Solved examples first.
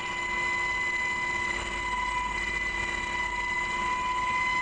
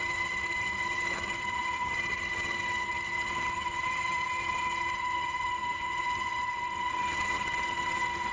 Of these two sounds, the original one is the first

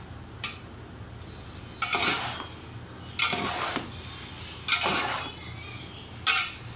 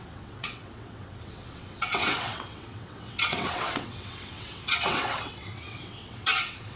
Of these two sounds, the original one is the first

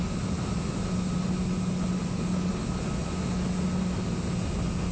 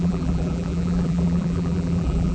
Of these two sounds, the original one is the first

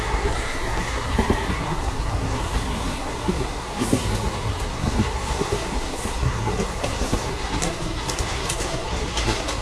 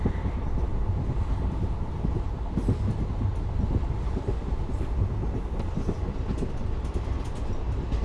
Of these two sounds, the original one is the second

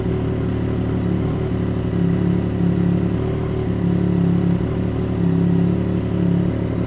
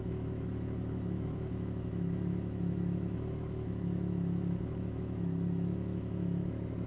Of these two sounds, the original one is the first